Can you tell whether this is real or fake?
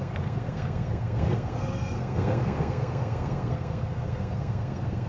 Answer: fake